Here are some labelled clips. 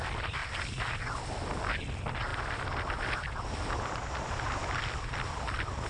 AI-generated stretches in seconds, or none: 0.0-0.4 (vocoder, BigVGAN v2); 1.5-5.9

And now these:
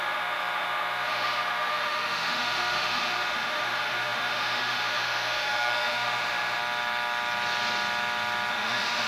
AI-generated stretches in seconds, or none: 0.0-6.6 (autoencoder, DAC-VAE); 8.5-9.1